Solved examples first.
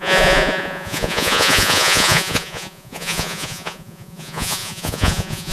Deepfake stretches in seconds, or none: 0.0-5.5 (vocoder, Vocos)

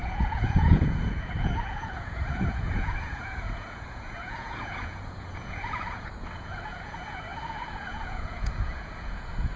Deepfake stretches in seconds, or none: 0.0-9.6 (vocoder, Vocos)